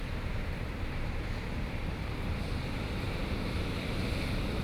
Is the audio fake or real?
fake